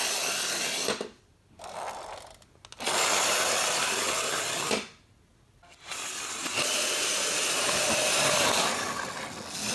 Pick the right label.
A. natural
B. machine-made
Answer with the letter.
A